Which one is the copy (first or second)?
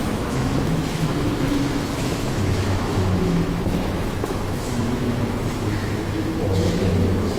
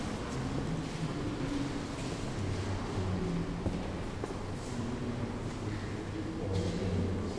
first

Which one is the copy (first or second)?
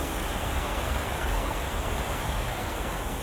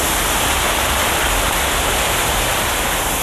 first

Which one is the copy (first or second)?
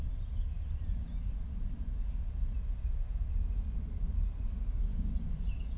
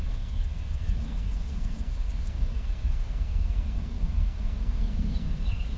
second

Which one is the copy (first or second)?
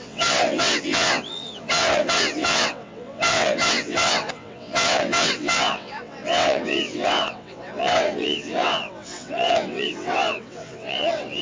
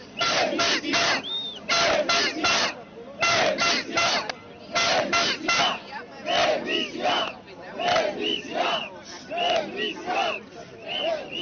first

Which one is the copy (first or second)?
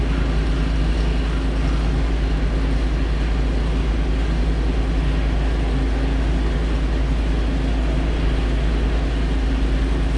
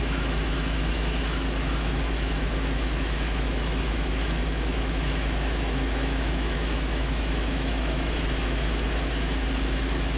second